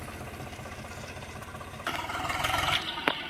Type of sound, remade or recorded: remade